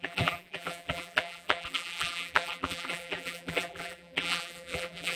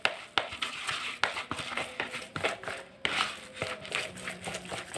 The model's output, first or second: first